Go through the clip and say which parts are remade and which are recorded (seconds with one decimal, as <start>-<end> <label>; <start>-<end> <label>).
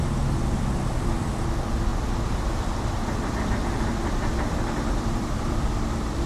0.0-6.3 remade